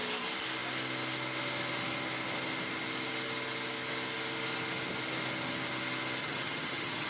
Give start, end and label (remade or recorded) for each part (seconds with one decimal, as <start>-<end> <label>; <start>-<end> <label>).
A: 0.0-6.2 recorded; 6.2-7.1 remade